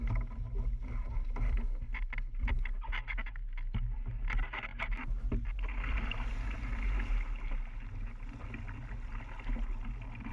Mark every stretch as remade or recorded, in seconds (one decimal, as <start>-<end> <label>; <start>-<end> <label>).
0.0-10.3 recorded